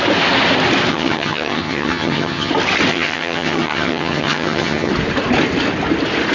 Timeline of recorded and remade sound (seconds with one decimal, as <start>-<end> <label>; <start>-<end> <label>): 0.0-0.9 recorded; 0.9-2.5 remade; 2.5-2.9 recorded; 2.9-4.9 remade; 4.9-6.3 recorded